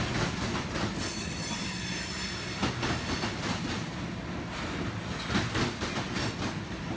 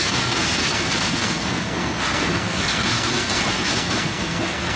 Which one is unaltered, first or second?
first